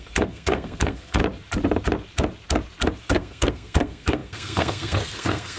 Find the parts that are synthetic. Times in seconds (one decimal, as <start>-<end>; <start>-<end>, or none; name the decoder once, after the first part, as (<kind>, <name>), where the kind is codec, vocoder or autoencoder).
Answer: 0.0-1.2 (codec, SNAC); 3.0-5.6